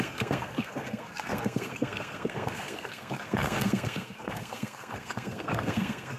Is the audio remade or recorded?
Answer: remade